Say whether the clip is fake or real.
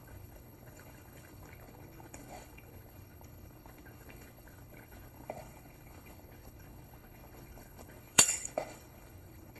fake